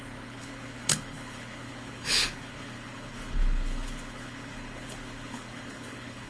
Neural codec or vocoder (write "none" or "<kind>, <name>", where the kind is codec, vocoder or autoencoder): codec, HILCodec